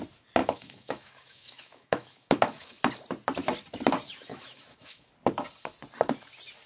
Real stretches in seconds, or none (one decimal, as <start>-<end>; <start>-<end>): 0.0-0.4; 2.8-4.3; 5.1-6.7